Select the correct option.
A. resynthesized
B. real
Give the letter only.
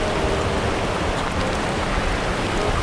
B